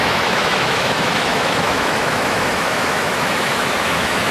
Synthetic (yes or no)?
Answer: yes